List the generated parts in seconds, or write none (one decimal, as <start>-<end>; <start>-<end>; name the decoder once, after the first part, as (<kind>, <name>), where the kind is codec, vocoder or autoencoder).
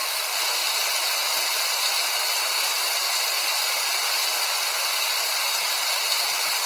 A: none